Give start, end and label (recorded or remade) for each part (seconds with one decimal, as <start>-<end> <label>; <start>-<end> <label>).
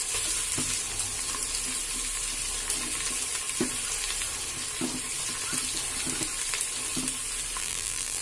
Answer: 0.0-7.6 recorded; 7.6-8.2 remade